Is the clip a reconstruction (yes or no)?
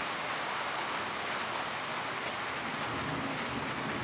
no